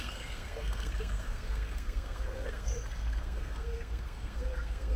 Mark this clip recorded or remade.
remade